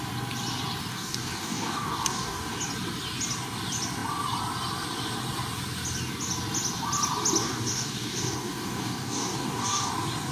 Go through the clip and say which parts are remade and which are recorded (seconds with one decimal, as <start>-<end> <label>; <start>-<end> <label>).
0.0-0.9 recorded; 0.9-2.6 remade; 2.6-7.4 recorded; 7.4-9.9 remade; 9.9-10.3 recorded